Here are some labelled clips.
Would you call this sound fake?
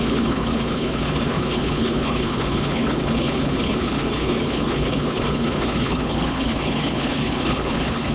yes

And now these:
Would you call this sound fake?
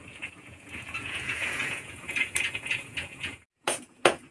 yes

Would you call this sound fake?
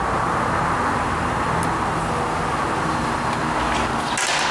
no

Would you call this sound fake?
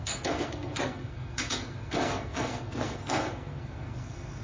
yes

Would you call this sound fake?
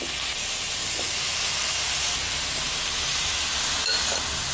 no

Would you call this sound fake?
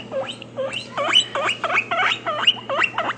no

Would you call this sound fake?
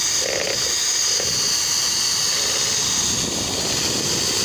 no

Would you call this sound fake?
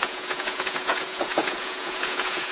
yes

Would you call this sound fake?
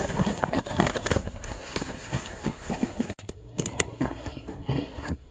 yes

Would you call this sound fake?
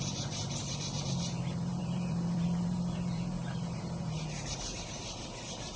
yes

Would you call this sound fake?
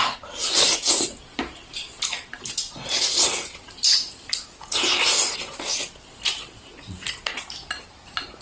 no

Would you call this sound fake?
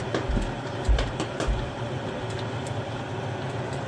no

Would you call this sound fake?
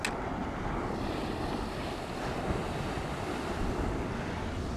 no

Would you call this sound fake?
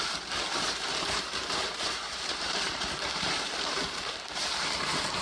yes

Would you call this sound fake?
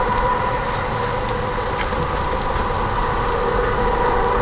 no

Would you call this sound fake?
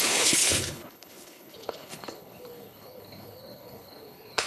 yes